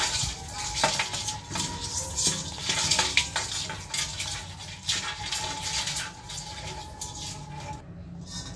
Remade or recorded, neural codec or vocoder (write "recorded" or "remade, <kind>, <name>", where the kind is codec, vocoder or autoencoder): recorded